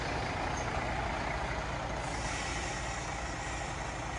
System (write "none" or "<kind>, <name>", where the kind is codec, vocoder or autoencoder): none